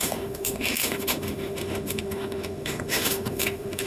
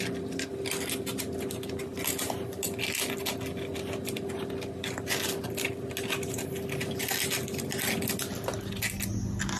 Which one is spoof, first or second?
first